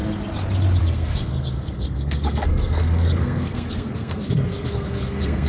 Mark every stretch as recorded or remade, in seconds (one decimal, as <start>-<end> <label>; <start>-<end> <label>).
0.0-0.8 recorded; 0.8-5.5 remade